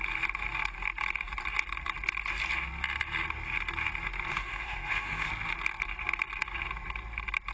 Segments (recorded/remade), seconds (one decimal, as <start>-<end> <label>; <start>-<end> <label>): 0.0-4.3 recorded; 4.3-5.3 remade; 5.3-7.5 recorded